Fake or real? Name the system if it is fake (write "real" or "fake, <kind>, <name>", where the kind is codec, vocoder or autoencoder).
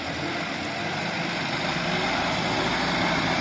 real